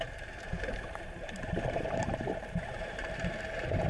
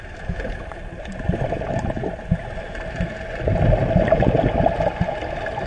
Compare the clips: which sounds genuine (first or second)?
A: second